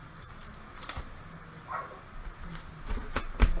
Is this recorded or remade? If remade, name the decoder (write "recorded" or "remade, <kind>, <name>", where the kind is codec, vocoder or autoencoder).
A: recorded